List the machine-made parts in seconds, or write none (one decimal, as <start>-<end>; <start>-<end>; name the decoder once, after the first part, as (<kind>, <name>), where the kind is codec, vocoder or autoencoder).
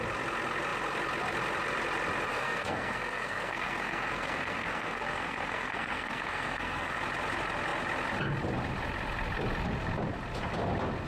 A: 2.3-7.0 (codec, SNAC)